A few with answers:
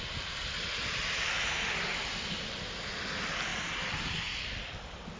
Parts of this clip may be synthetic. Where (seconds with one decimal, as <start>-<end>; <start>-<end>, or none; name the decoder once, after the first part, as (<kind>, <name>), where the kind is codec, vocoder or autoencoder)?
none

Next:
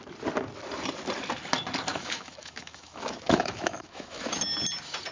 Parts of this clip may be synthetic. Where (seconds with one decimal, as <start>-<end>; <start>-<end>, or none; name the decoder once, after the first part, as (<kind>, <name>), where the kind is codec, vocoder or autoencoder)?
1.9-4.3 (autoencoder, DAC-VAE)

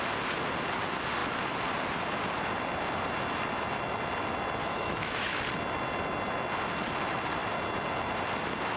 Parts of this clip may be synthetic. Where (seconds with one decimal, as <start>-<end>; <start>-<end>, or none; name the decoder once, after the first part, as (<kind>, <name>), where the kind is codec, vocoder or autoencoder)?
4.6-5.4 (autoencoder, DAC-VAE)